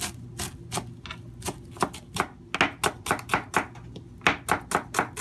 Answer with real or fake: real